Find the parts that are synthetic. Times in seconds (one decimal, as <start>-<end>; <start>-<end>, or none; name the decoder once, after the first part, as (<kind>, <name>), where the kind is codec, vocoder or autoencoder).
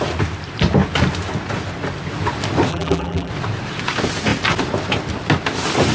2.7-3.3 (vocoder, BigVGAN v2)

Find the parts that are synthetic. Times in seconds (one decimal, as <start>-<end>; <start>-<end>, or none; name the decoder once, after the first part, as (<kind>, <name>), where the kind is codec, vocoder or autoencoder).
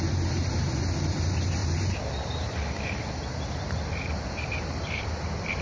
1.6-5.0 (vocoder, BigVGAN v2)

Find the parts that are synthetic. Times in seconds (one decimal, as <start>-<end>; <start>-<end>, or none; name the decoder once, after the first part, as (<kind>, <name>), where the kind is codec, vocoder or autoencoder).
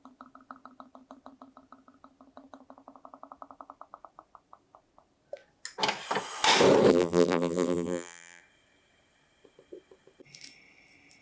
6.9-8.4 (vocoder, BigVGAN v2)